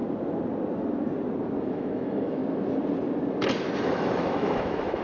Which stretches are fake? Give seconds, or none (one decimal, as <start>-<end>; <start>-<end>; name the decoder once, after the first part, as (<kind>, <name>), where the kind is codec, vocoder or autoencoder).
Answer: 1.6-2.4 (autoencoder, DAC-VAE); 3.9-5.0